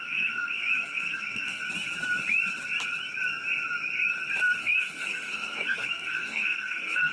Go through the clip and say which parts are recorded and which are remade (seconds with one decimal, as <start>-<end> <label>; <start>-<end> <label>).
0.0-1.6 remade; 1.6-4.6 recorded; 4.6-7.1 remade